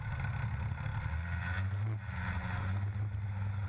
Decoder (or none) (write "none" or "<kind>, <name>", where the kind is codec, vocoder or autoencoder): none